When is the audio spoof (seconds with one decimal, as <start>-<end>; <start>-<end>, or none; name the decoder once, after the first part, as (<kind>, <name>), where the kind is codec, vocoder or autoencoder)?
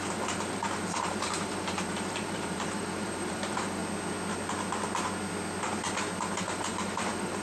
0.0-3.8 (vocoder, BigVGAN v2); 6.4-7.4